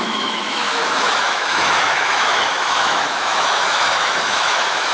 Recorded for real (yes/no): no